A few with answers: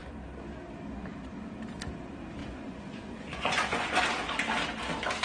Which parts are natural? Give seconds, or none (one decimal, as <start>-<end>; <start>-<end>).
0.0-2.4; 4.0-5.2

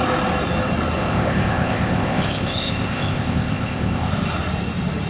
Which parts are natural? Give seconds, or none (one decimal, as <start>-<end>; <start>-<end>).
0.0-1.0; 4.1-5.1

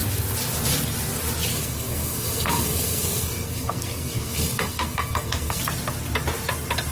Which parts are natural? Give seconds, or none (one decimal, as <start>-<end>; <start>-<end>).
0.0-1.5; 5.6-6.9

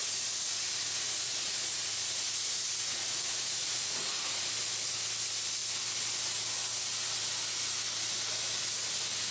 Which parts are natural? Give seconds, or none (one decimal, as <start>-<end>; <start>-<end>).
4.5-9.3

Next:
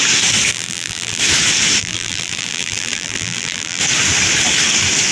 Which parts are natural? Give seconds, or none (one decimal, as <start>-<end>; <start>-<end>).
0.0-0.5; 1.2-1.8; 3.8-5.1